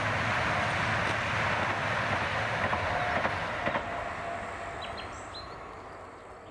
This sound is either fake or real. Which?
real